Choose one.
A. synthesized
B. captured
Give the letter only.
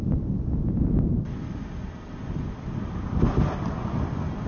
B